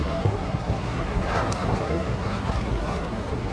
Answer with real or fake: fake